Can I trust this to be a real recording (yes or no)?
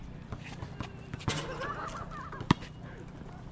yes